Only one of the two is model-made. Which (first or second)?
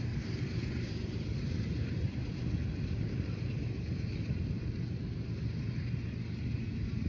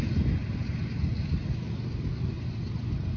first